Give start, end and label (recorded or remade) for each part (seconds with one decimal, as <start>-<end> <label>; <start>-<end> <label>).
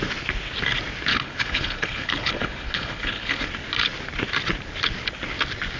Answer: 0.0-1.1 recorded; 1.1-3.5 remade; 3.5-5.8 recorded